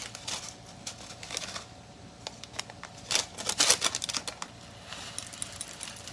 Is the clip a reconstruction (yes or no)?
no